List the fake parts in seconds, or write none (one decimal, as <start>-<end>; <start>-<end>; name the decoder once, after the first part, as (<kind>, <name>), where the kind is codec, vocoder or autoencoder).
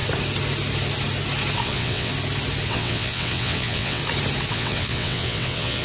1.6-2.1 (vocoder, WaveNeXt); 2.7-4.0; 4.5-5.8